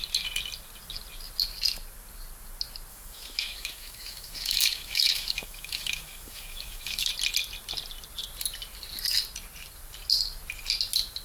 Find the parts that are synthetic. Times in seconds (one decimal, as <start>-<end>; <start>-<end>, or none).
2.9-7.1